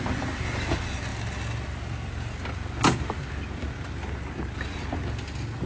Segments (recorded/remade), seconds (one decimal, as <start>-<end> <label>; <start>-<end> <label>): 0.0-5.7 recorded

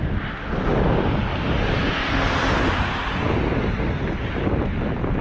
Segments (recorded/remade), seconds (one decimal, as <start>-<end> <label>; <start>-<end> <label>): 0.0-5.2 recorded

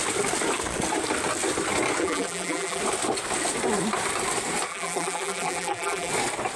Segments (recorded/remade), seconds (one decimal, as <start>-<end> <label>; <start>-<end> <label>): 0.0-2.0 recorded; 2.0-2.8 remade; 2.8-4.7 recorded; 4.7-6.1 remade; 6.1-6.6 recorded

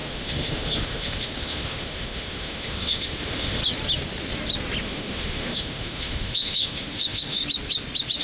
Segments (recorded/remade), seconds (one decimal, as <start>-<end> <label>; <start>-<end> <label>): 0.0-3.6 remade; 3.6-4.8 recorded; 4.8-7.4 remade; 7.4-8.2 recorded

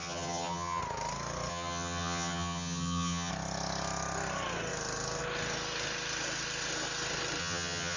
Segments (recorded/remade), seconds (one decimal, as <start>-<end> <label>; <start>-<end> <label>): 0.0-0.8 remade; 0.8-1.5 recorded; 1.5-3.3 remade; 3.3-7.4 recorded; 7.4-8.0 remade

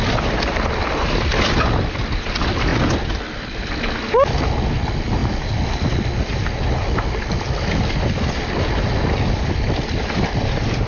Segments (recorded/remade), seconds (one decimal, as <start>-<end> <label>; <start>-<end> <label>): 0.0-10.9 recorded